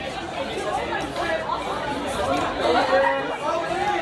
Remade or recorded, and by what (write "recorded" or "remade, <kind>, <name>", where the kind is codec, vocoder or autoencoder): recorded